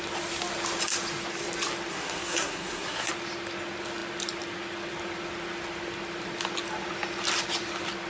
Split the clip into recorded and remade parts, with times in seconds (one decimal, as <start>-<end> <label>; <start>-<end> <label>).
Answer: 0.0-1.9 recorded; 1.9-3.1 remade; 3.1-8.1 recorded